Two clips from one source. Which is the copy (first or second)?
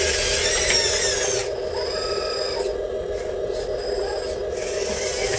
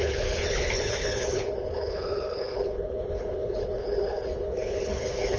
second